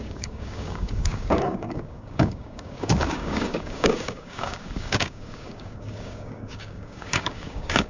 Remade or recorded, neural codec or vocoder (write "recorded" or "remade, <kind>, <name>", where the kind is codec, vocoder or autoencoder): remade, codec, DAC